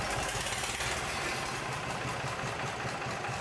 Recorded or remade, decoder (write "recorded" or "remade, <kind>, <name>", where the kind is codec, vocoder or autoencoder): recorded